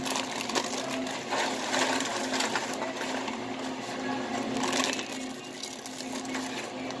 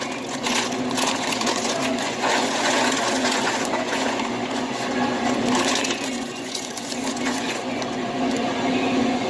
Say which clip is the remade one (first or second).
second